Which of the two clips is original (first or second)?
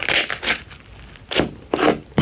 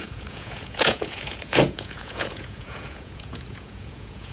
first